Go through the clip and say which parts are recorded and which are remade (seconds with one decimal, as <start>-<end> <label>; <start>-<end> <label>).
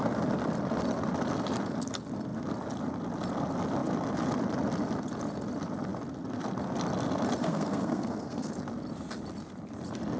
0.0-7.4 recorded; 7.4-8.5 remade; 8.5-10.2 recorded